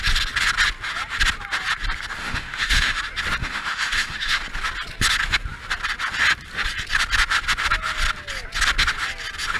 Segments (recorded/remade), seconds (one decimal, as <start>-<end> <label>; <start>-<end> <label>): 0.0-2.2 recorded; 2.2-3.0 remade; 3.0-3.4 recorded; 3.4-4.4 remade; 4.4-9.6 recorded